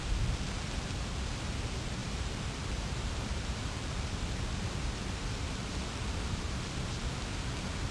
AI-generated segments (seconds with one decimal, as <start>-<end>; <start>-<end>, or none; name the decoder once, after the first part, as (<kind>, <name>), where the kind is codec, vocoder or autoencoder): 2.0-6.7 (vocoder, BigVGAN v2)